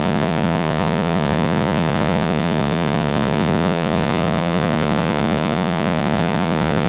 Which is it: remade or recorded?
remade